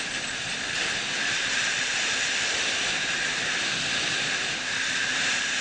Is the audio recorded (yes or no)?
yes